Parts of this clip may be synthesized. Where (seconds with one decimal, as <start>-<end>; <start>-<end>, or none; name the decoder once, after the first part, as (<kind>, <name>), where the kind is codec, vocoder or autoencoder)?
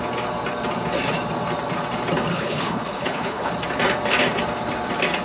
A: 2.3-3.5 (codec, HILCodec)